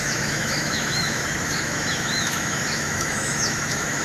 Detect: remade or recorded remade